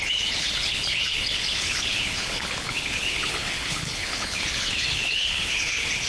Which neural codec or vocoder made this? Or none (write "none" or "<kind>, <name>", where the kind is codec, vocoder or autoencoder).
codec, HILCodec